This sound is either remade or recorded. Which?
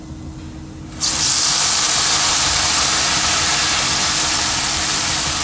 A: recorded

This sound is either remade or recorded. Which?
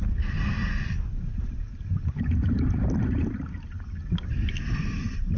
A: recorded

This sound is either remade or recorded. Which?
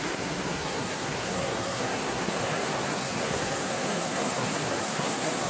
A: remade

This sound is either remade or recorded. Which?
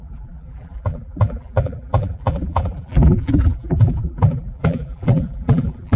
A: remade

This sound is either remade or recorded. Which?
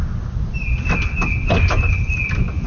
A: recorded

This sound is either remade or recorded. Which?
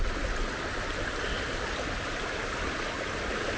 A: recorded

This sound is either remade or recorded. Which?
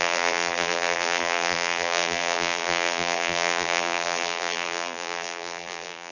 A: remade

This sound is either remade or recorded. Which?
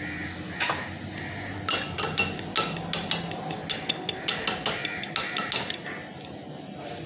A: recorded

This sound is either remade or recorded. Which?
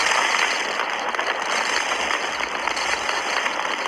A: recorded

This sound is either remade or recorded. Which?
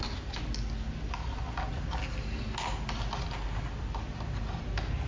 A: recorded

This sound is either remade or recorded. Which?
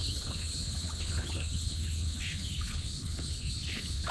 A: remade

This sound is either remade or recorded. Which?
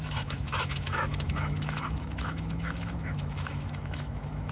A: remade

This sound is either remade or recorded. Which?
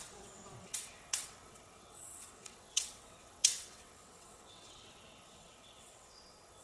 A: remade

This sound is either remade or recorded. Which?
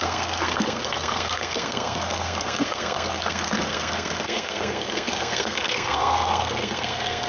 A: remade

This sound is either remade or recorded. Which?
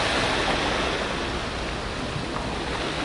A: recorded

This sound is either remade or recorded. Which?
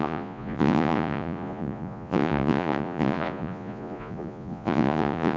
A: remade